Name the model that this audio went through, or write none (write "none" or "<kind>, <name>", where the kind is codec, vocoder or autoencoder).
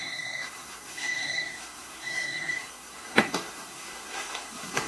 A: codec, SNAC